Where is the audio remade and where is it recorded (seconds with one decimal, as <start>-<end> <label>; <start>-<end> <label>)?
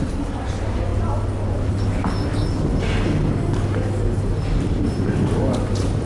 0.0-0.9 remade; 0.9-4.6 recorded; 4.6-6.1 remade